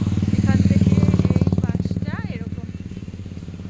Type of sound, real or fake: real